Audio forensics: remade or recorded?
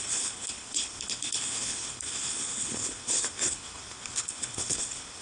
remade